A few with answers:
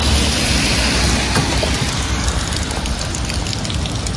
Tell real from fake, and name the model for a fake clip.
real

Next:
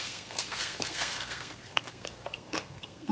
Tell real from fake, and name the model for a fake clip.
fake, codec, SNAC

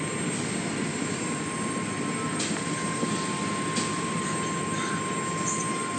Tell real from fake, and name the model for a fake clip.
real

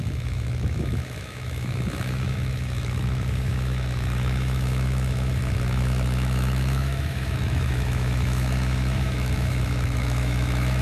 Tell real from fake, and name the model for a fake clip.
fake, autoencoder, DAC-VAE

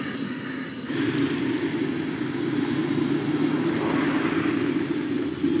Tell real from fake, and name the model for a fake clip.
real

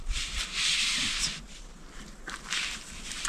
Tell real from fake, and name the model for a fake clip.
real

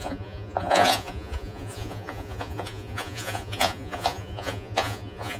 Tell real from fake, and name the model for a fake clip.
fake, vocoder, Vocos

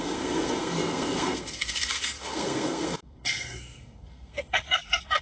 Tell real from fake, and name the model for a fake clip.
fake, codec, SNAC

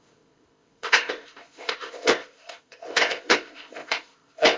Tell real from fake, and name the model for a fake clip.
fake, codec, ZipCodec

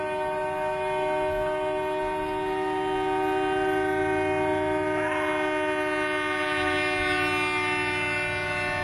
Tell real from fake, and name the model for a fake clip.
real